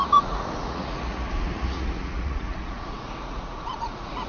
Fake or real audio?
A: fake